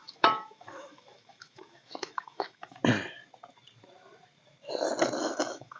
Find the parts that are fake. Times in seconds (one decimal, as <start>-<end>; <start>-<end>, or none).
0.0-2.8; 5.2-5.8

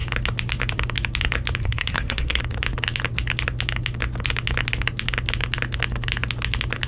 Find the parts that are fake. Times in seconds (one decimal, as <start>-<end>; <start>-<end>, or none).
1.6-2.4

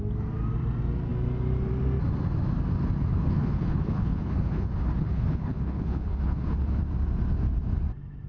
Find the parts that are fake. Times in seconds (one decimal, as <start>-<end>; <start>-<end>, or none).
3.1-6.8

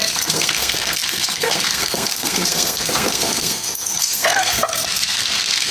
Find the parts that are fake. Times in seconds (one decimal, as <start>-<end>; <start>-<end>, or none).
0.0-5.7

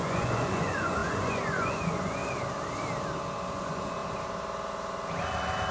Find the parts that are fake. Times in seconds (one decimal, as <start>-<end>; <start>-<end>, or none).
0.0-2.2; 3.5-4.0

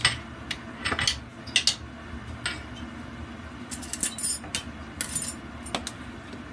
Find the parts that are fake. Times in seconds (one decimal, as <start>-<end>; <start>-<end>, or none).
none